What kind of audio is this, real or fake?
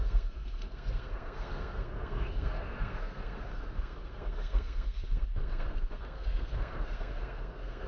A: fake